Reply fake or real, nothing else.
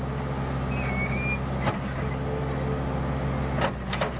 real